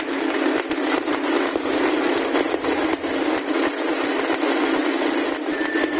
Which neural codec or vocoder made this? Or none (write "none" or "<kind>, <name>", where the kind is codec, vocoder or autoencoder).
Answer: none